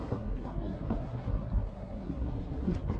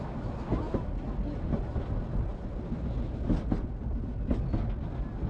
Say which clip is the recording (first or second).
second